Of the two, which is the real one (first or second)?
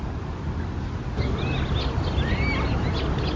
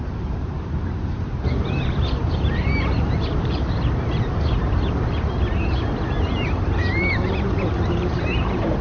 first